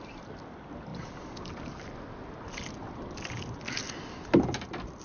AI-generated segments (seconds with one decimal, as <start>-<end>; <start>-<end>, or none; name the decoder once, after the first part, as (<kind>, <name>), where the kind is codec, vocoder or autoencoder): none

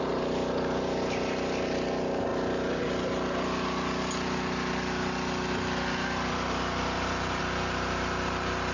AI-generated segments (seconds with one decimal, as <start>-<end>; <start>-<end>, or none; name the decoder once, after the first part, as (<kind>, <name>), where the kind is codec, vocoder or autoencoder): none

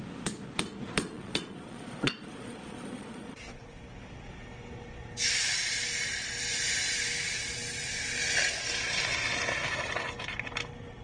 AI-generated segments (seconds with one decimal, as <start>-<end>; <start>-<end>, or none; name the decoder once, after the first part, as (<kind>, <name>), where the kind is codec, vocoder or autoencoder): 1.0-3.9 (vocoder, Vocos)